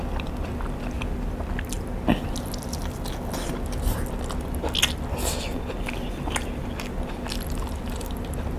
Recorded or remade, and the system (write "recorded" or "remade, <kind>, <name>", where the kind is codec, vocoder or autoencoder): recorded